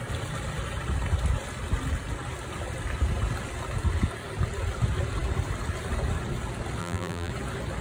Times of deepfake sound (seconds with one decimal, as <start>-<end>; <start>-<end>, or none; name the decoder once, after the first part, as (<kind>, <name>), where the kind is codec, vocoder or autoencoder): 6.8-7.3 (vocoder, BigVGAN v2)